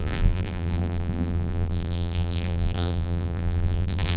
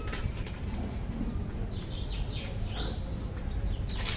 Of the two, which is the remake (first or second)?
first